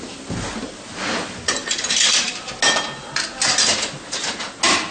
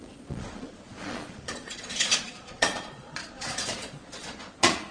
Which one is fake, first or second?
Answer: second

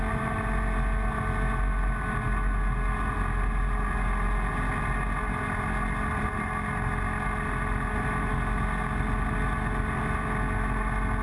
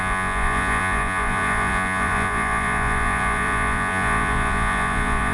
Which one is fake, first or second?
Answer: second